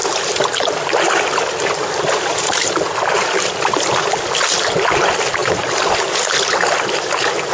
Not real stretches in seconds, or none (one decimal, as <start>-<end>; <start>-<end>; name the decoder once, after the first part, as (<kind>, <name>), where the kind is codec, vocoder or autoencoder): 0.0-4.0 (vocoder, BigVGAN v2)